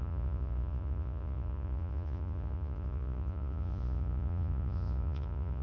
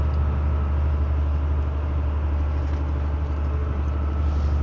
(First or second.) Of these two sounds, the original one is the second